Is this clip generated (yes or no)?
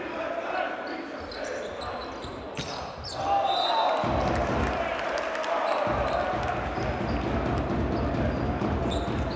no